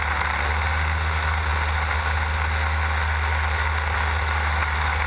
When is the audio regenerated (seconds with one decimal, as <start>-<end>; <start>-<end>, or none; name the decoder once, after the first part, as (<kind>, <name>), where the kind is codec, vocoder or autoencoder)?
none